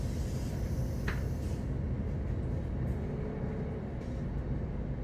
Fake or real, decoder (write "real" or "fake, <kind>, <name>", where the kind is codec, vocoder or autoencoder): real